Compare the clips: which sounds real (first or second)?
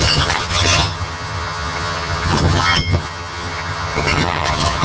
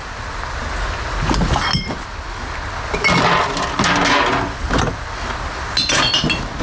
second